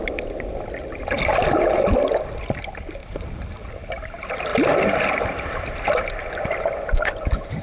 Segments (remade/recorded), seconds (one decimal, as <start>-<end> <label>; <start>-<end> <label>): 0.0-7.6 recorded